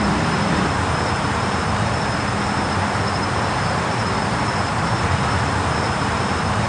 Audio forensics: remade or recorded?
remade